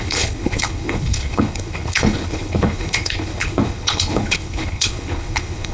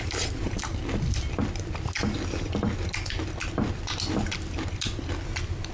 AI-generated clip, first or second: first